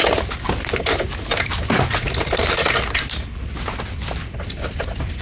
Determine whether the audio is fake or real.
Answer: real